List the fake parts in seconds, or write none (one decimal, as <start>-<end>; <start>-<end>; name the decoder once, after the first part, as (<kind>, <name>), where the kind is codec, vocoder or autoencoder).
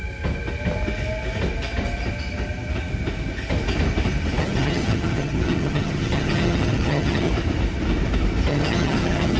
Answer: 4.4-7.3 (vocoder, HiFi-GAN); 8.5-9.4